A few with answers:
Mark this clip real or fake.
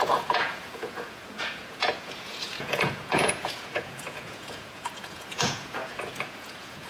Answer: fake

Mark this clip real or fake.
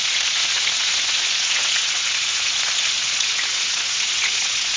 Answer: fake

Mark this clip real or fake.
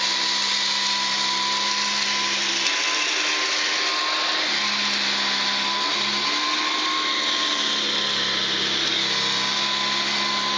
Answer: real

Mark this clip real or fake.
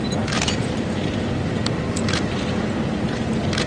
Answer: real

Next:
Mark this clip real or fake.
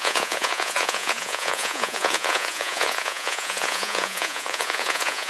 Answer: fake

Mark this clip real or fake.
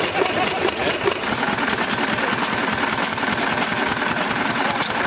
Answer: real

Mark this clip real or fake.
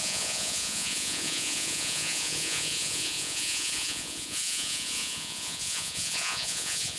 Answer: fake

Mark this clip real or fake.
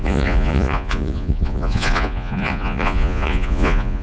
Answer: fake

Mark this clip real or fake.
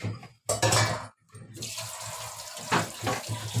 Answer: real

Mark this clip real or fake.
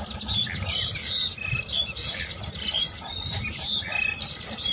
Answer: real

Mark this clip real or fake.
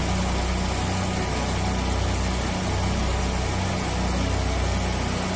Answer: real